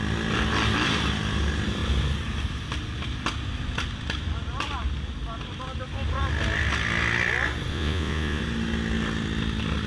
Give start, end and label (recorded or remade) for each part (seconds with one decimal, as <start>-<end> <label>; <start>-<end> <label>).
0.0-7.7 recorded; 7.7-8.4 remade; 8.4-9.9 recorded